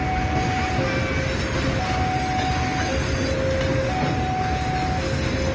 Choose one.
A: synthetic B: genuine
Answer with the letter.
B